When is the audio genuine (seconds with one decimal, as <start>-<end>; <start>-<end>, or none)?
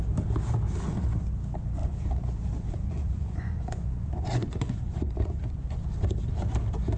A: 0.0-1.8; 5.9-7.0